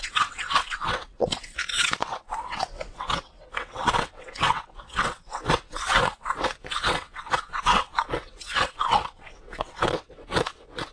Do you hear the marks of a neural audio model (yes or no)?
yes